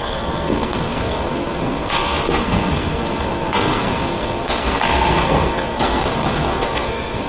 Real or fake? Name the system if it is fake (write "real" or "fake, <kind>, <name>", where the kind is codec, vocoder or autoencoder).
fake, codec, SNAC